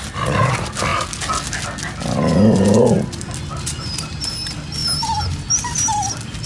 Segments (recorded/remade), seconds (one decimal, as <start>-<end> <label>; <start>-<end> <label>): 0.0-4.8 recorded; 4.8-6.5 remade